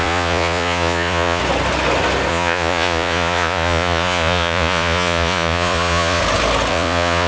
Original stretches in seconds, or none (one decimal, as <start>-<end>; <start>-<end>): 1.4-2.3; 6.2-6.7